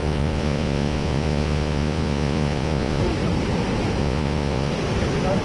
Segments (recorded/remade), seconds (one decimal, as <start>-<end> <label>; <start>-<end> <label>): 0.0-3.0 remade; 3.0-4.0 recorded; 4.0-4.7 remade; 4.7-5.4 recorded